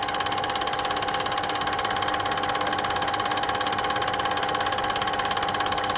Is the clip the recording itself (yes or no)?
yes